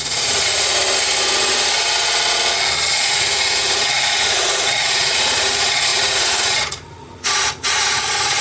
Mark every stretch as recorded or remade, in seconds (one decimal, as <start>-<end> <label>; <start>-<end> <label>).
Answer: 0.0-0.8 remade; 0.8-3.0 recorded; 3.0-8.4 remade